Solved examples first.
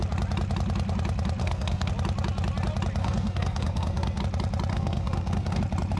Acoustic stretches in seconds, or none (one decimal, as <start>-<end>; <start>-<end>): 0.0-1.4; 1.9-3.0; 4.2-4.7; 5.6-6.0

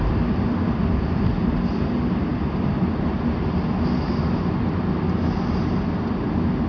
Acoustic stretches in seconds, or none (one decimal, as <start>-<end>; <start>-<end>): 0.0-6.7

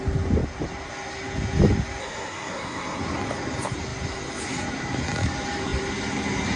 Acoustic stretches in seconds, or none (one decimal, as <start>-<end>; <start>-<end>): 0.0-2.0; 3.0-6.6